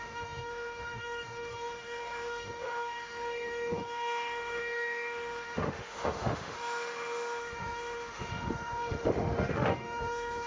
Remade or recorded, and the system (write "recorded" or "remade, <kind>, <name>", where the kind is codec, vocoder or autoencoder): remade, autoencoder, DAC-VAE